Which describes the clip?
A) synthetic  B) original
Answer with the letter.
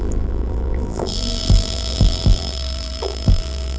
A